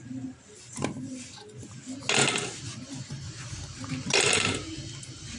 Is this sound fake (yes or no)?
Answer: no